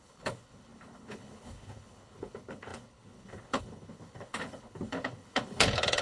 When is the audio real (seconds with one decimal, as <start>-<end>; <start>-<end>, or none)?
none